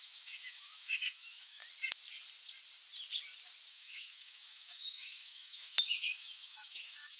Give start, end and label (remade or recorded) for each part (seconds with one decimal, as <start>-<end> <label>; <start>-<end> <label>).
0.0-1.6 remade; 1.6-3.7 recorded; 3.7-7.2 remade